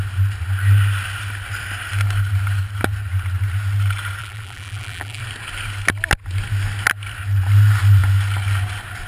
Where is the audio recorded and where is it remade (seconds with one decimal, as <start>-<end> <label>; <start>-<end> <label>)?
0.0-4.2 recorded; 4.2-5.2 remade; 5.2-9.1 recorded